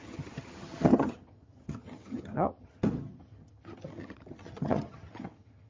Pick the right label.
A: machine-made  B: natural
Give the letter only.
A